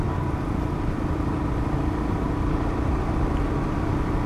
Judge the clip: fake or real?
real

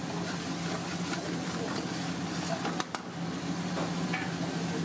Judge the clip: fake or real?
real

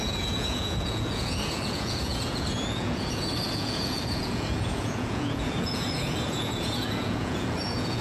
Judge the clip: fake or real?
fake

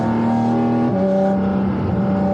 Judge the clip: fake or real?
real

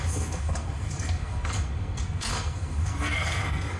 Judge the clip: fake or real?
fake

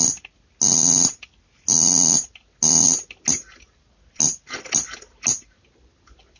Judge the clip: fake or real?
real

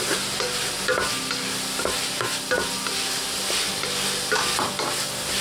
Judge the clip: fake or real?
real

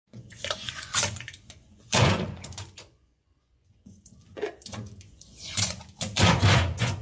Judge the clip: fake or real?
fake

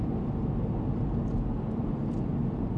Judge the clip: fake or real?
real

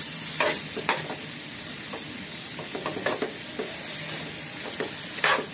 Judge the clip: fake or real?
real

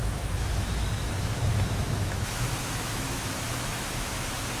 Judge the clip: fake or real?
fake